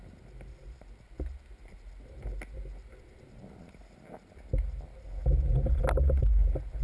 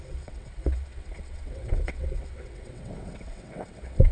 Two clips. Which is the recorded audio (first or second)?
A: first